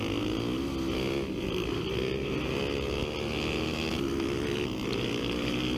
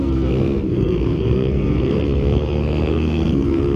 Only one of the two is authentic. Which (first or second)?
first